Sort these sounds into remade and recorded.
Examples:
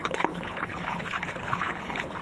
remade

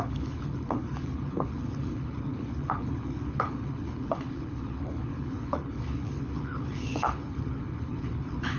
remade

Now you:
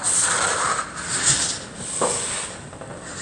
recorded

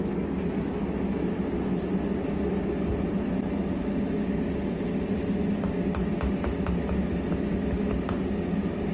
recorded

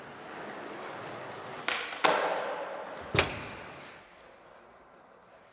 recorded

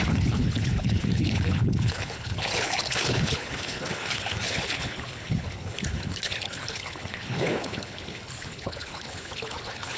remade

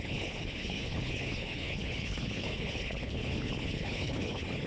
remade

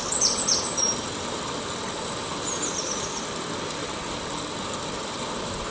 recorded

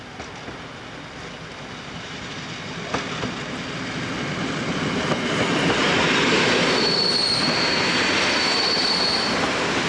recorded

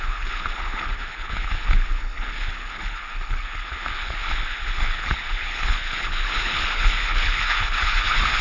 remade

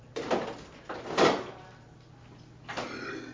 recorded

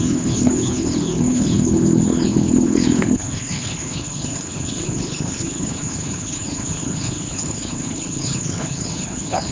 remade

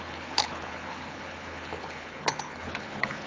remade